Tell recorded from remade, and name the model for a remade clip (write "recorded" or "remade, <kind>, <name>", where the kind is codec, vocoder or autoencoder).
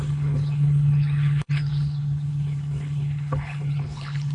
remade, codec, HILCodec